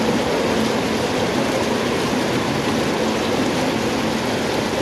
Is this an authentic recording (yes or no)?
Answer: yes